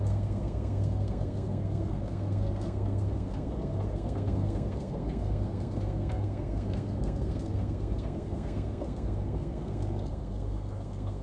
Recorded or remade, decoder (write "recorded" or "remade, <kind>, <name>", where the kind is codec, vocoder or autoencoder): remade, codec, SNAC